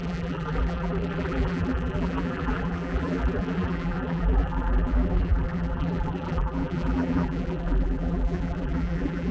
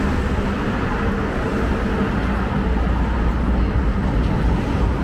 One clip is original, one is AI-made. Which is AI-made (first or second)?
first